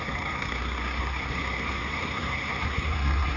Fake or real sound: fake